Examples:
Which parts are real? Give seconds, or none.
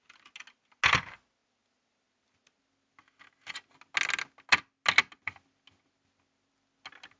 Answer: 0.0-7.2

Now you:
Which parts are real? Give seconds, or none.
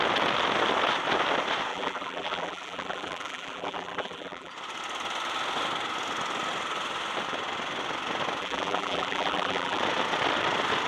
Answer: 0.0-1.7; 4.5-8.4; 9.8-10.9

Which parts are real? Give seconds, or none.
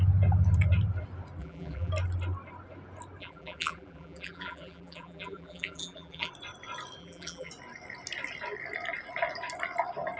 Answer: 0.0-1.4; 1.9-3.2; 6.3-7.0; 7.5-10.2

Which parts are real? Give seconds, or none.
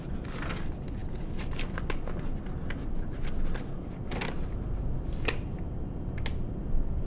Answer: 0.0-7.1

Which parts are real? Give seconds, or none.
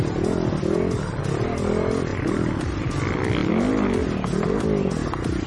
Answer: 0.0-5.5